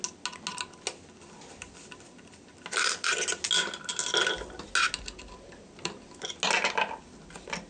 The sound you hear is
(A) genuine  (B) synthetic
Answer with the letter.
A